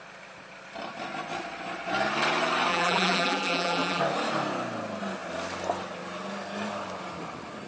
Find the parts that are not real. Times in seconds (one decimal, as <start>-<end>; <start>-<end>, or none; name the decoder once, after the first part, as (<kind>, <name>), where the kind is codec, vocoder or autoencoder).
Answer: 2.7-4.0 (vocoder, BigVGAN v2)